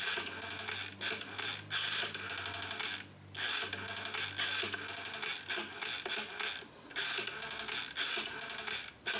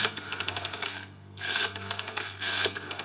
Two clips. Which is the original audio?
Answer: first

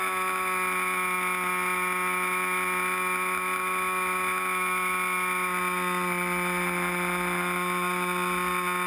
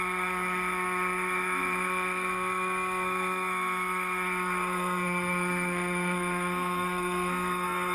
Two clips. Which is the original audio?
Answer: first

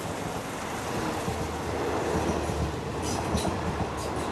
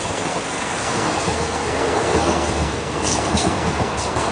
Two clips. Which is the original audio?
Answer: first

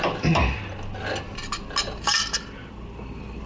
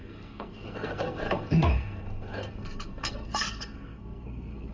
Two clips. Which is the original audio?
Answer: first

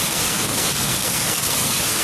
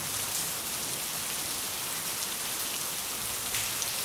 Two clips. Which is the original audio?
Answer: second